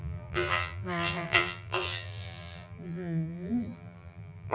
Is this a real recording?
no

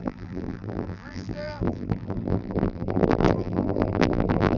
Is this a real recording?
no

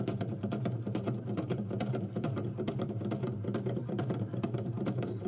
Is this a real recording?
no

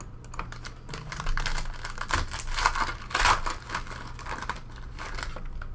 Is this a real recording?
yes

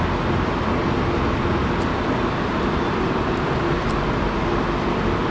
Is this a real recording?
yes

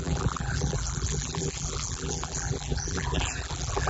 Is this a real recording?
no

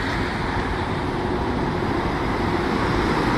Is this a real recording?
no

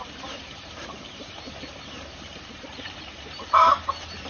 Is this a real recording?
no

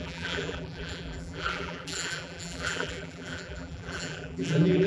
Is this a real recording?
no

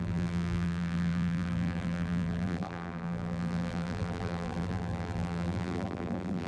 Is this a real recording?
no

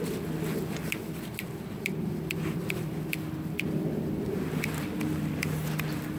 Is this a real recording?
no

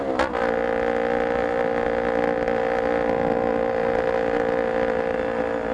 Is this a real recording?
yes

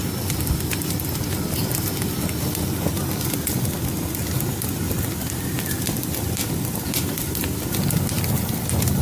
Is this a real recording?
yes